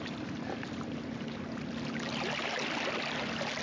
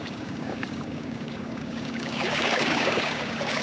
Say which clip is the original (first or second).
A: first